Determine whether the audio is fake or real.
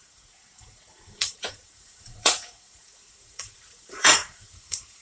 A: fake